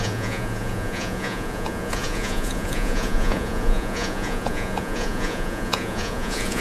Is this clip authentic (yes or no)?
no